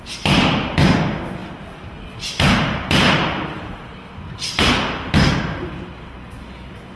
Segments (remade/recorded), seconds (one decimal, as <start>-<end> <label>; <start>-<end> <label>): 0.0-7.0 recorded